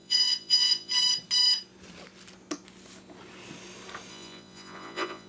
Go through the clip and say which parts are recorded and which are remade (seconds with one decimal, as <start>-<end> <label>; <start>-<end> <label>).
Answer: 0.0-0.9 remade; 0.9-4.1 recorded; 4.1-5.3 remade